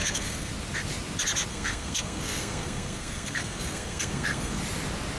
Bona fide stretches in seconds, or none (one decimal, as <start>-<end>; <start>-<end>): 0.5-1.5; 4.6-5.2